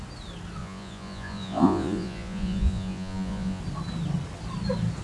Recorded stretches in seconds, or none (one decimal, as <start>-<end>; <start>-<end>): 0.0-0.6; 3.6-5.0